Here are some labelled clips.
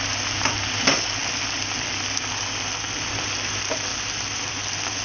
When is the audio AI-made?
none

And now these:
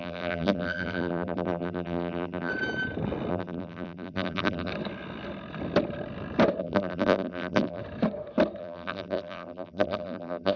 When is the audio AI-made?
0.0-2.5 (vocoder, BigVGAN v2); 3.3-4.7; 6.6-7.8; 8.6-10.6